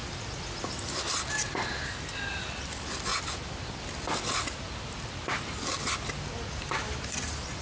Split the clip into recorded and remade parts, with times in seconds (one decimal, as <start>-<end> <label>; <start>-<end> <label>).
0.0-7.6 recorded